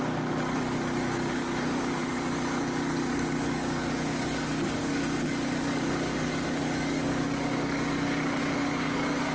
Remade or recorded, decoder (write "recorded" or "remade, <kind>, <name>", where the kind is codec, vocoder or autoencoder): remade, codec, DAC